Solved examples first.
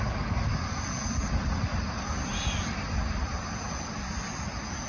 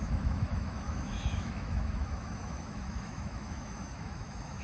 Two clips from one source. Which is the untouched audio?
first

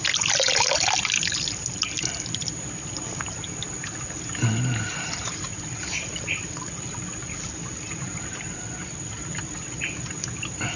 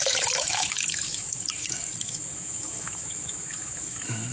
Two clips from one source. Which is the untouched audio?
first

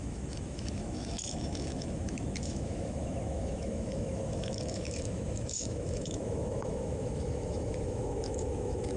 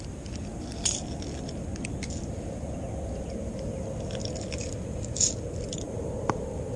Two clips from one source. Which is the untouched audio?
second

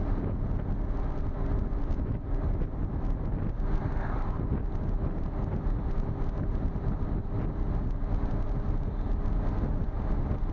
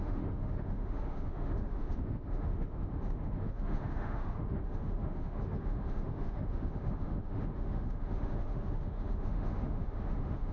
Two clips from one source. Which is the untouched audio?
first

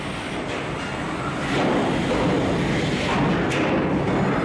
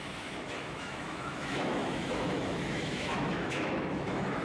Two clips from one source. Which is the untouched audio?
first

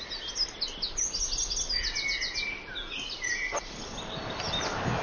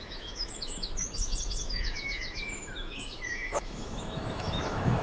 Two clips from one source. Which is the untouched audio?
first